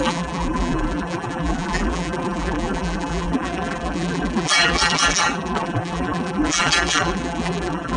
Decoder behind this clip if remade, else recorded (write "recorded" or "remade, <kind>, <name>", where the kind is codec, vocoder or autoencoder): remade, vocoder, BigVGAN v2